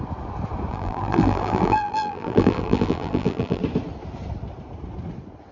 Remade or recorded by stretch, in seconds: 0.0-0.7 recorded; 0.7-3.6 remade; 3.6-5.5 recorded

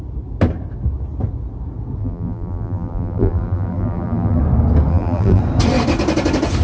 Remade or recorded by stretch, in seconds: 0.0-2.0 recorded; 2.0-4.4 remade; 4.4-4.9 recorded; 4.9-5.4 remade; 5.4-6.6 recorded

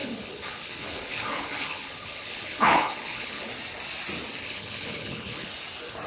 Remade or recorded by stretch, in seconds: 0.0-3.5 remade; 3.5-4.4 recorded; 4.4-5.5 remade; 5.5-6.1 recorded

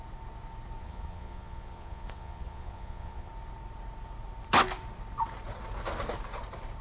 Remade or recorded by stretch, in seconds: 0.0-0.8 recorded; 0.8-3.3 remade; 3.3-6.8 recorded

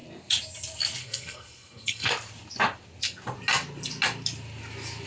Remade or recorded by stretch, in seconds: 0.0-1.0 recorded; 1.0-2.1 remade; 2.1-5.1 recorded

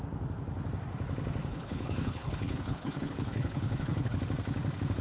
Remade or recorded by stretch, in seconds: 0.0-1.4 recorded; 1.4-4.2 remade; 4.2-5.0 recorded

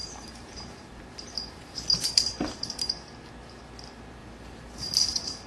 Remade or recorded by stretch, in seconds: 0.0-3.3 remade; 3.3-4.2 recorded; 4.2-5.5 remade